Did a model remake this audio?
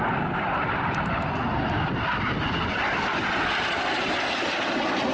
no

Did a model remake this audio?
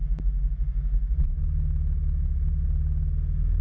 no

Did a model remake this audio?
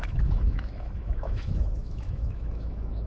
yes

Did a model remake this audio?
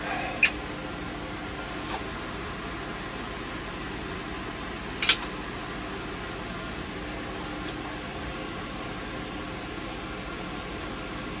no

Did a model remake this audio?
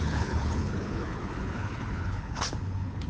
yes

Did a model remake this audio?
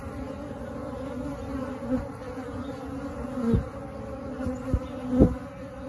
no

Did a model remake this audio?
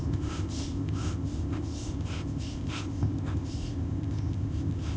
yes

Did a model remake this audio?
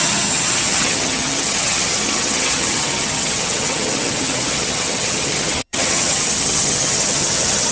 yes